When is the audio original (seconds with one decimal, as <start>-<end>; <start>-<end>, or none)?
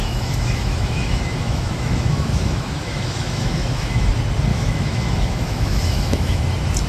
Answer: 4.1-4.5; 6.4-6.9